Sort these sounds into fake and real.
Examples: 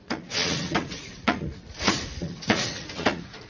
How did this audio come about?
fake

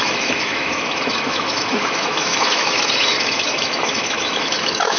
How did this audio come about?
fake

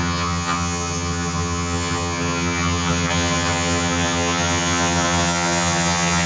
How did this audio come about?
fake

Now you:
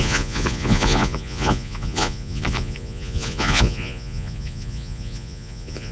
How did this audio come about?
fake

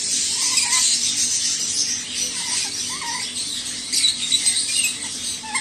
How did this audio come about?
real